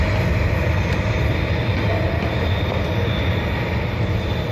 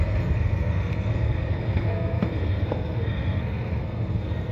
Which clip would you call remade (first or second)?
second